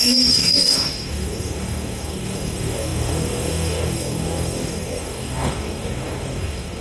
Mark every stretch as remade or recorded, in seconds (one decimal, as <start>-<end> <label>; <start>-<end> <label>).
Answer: 0.0-6.8 remade